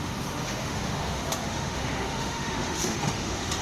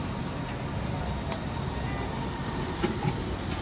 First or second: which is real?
second